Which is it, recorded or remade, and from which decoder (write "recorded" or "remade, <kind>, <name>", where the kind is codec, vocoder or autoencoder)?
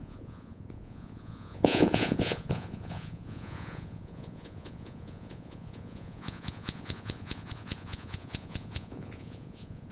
remade, vocoder, Vocos